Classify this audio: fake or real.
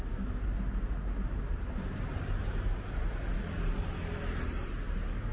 real